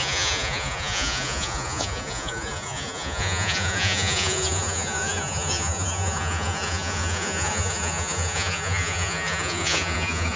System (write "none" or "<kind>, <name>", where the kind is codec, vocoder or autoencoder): vocoder, Vocos